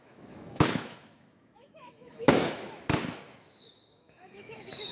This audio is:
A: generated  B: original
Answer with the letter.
A